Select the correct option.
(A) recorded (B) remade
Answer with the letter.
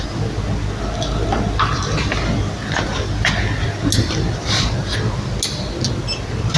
A